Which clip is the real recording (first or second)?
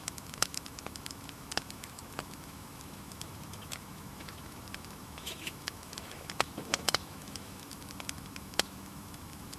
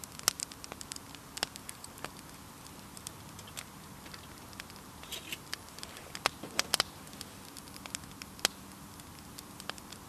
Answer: second